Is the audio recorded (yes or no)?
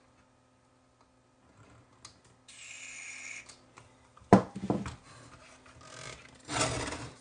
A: yes